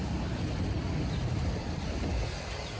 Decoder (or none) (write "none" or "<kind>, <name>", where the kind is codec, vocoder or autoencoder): none